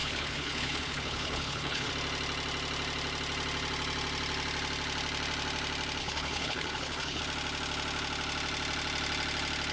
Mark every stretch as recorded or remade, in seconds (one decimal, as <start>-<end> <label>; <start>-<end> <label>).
0.0-1.9 remade; 1.9-6.0 recorded; 6.0-7.2 remade; 7.2-9.7 recorded